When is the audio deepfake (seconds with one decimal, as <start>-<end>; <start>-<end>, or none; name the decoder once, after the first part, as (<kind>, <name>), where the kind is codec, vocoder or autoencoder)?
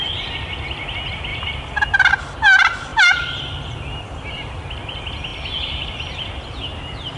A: 1.3-2.1 (vocoder, BigVGAN v2); 2.9-4.5; 5.3-7.2